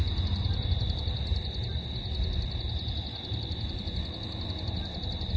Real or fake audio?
real